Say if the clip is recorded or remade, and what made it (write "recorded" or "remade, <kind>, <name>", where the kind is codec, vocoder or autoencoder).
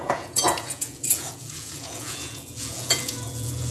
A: remade, vocoder, Vocos